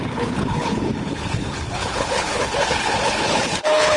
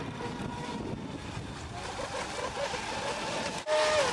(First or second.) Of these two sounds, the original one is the second